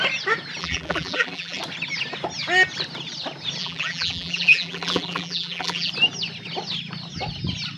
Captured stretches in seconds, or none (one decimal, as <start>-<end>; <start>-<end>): 0.0-0.6; 1.6-3.6; 5.9-7.8